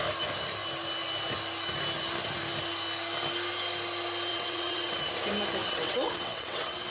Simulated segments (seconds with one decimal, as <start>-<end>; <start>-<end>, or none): 4.3-5.0; 5.6-6.9